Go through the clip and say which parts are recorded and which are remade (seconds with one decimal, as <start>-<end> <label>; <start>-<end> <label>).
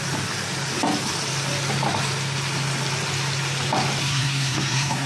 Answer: 0.0-4.0 recorded; 4.0-5.1 remade